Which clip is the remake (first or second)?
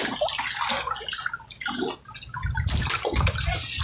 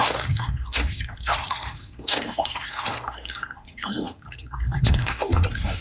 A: second